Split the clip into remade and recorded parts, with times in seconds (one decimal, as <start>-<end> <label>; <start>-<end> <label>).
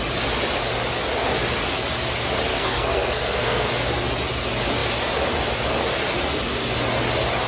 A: 0.0-2.5 recorded; 2.5-3.7 remade; 3.7-7.5 recorded